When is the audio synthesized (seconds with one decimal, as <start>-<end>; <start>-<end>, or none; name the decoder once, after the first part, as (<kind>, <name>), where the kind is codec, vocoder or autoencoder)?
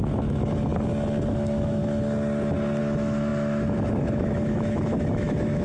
0.0-0.7 (autoencoder, DAC-VAE); 1.3-1.8; 2.8-5.6